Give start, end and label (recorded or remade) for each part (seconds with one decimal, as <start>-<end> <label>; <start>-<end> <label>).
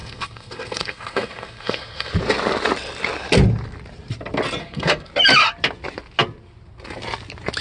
0.0-2.1 remade; 2.1-4.6 recorded; 4.6-5.1 remade; 5.1-7.6 recorded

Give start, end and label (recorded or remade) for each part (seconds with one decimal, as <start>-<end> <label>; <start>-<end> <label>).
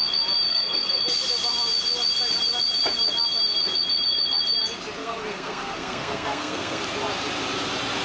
0.0-0.5 recorded; 0.5-1.0 remade; 1.0-5.0 recorded; 5.0-6.8 remade; 6.8-8.0 recorded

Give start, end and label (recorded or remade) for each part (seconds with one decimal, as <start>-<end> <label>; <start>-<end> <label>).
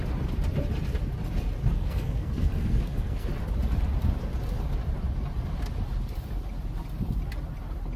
0.0-1.7 recorded; 1.7-3.3 remade; 3.3-8.0 recorded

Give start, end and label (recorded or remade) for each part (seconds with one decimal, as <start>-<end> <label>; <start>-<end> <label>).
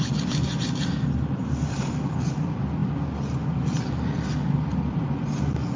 0.0-5.8 recorded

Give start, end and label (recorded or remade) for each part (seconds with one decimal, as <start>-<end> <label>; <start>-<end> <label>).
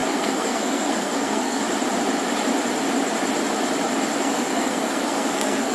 0.0-1.6 remade; 1.6-4.2 recorded; 4.2-5.7 remade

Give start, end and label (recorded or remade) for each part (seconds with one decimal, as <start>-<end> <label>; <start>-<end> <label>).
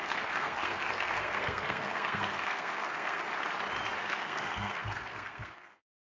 0.0-3.2 remade; 3.2-4.0 recorded; 4.0-6.2 remade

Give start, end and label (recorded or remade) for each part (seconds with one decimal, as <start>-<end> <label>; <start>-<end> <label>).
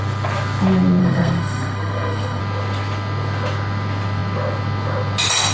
0.0-1.0 recorded; 1.0-2.4 remade; 2.4-5.5 recorded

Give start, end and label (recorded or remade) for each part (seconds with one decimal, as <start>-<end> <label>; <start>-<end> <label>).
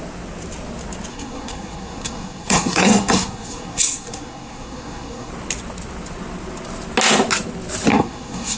0.0-1.1 recorded; 1.1-5.3 remade; 5.3-7.9 recorded; 7.9-8.6 remade